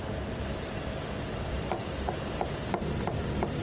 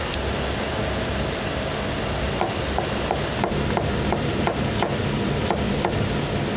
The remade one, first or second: first